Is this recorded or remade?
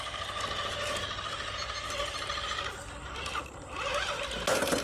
recorded